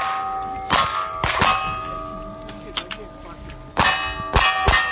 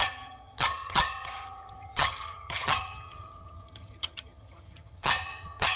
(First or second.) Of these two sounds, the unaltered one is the first